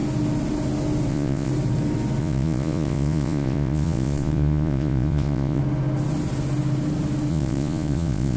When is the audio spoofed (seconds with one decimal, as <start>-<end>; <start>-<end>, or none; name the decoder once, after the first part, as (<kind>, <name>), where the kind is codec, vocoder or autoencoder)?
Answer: 1.1-1.5 (vocoder, Vocos); 2.2-5.6; 7.3-8.4